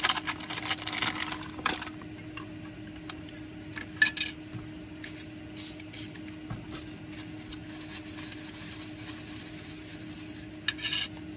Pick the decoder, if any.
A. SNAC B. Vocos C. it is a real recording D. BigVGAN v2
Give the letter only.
C